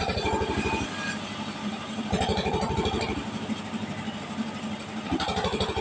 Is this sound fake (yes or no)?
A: yes